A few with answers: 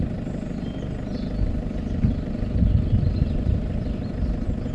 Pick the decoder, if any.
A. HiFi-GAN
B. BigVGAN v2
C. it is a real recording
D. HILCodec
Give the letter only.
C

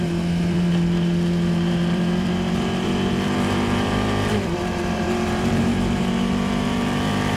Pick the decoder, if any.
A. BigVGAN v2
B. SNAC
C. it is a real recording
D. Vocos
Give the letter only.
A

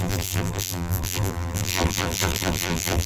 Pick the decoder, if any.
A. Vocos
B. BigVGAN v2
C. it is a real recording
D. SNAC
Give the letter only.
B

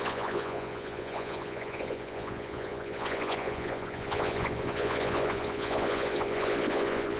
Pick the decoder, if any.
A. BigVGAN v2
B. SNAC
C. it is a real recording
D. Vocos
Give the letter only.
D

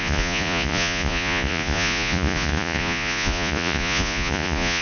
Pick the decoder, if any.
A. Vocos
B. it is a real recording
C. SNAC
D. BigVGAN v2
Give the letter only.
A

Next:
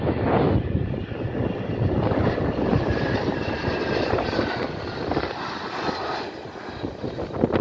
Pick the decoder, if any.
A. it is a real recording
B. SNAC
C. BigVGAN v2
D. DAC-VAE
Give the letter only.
C